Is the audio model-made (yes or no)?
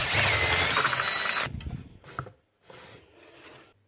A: no